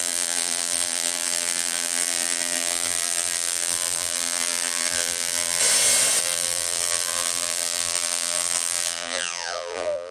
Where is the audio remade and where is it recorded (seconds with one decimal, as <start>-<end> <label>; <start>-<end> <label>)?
0.0-5.6 remade; 5.6-6.2 recorded; 6.2-10.1 remade